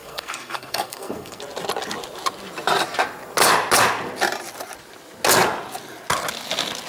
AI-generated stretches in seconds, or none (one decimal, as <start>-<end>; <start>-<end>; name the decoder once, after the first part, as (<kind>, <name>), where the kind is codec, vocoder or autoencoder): 0.0-1.4 (codec, SNAC)